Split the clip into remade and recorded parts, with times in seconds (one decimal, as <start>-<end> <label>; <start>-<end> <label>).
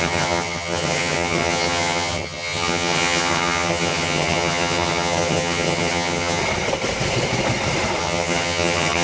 0.0-6.4 remade; 6.4-8.0 recorded; 8.0-9.0 remade